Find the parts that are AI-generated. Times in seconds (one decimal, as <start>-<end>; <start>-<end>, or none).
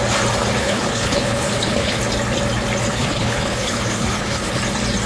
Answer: 0.6-2.0; 2.9-4.6